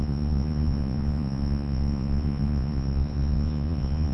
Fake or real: fake